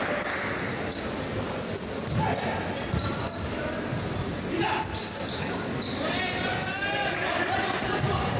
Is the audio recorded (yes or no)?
yes